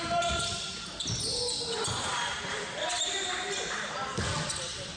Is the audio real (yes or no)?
yes